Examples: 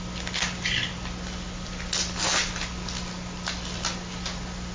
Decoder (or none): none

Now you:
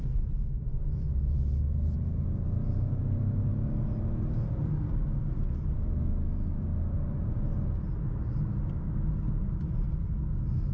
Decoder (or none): none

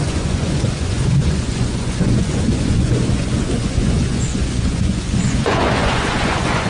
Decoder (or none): vocoder, Vocos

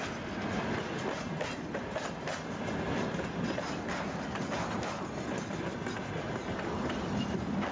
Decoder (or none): none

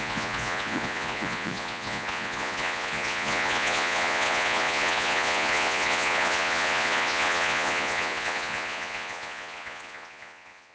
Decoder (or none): vocoder, Vocos